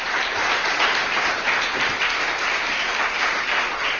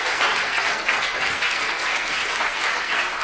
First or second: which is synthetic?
second